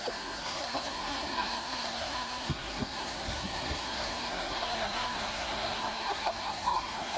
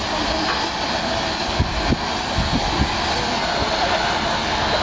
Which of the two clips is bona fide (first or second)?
second